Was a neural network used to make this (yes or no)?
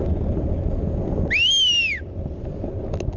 no